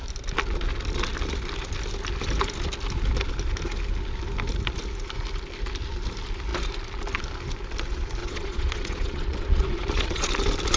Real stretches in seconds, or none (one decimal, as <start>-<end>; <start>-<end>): 0.0-8.2; 10.3-10.8